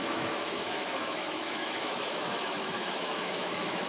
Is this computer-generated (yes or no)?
yes